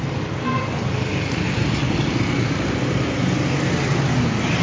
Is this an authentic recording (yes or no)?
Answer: yes